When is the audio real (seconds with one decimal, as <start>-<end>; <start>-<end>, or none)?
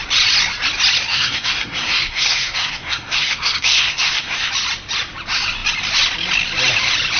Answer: 0.0-1.1; 4.5-7.2